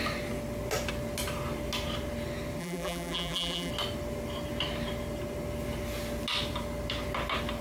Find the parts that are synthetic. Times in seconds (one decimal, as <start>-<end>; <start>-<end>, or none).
2.6-3.7